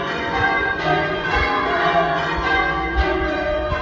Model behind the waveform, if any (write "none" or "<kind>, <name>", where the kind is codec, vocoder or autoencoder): vocoder, Vocos